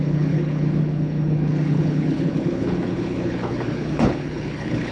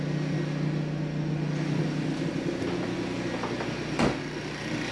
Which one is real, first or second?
second